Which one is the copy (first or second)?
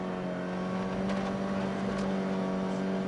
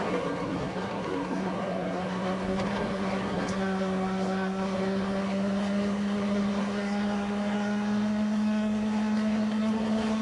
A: second